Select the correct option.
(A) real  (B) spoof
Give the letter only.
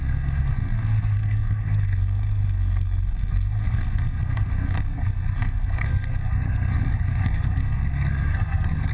B